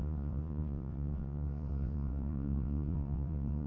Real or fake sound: fake